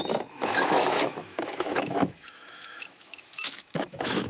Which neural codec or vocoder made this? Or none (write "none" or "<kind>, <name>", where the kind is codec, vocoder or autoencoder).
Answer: autoencoder, DAC-VAE